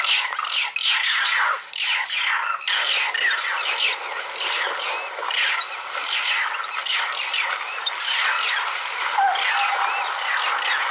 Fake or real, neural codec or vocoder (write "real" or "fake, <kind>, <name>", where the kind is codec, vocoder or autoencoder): real